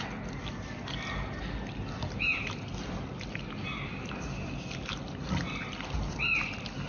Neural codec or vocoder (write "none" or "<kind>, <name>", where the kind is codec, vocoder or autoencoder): none